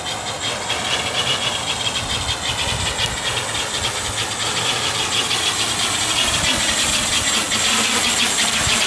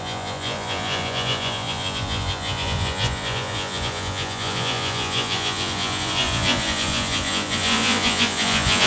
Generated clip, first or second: second